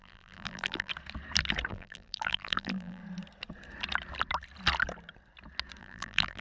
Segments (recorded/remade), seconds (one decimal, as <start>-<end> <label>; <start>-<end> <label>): 0.0-0.9 remade; 0.9-1.7 recorded; 1.7-3.0 remade; 3.0-5.8 recorded; 5.8-6.4 remade